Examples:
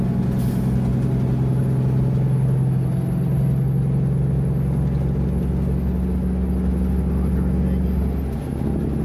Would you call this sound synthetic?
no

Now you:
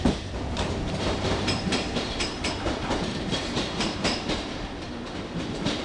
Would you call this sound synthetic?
yes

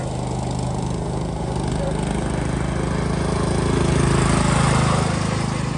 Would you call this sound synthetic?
no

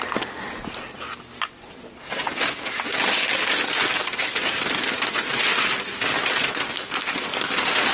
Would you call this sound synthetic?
no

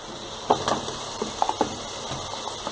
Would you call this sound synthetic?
no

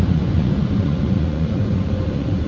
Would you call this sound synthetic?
yes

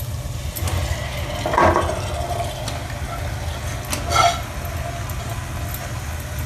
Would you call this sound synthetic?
no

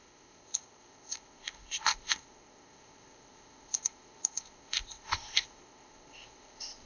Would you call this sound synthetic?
yes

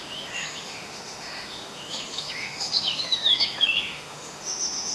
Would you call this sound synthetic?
yes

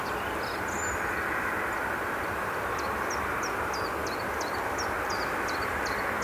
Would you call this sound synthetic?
no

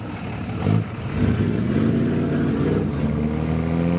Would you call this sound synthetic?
no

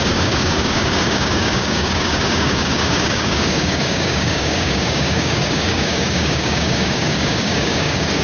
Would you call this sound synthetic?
yes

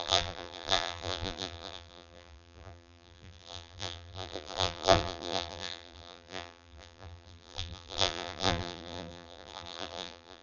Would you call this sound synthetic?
yes